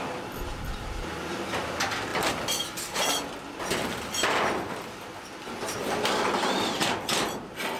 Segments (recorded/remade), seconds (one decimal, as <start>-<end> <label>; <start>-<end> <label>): 0.0-7.8 recorded